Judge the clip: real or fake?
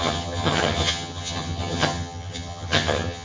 fake